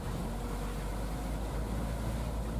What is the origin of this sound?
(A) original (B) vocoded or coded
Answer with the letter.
A